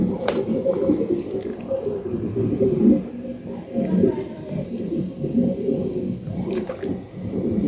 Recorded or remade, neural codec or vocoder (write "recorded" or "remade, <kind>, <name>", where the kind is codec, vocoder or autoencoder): remade, vocoder, BigVGAN v2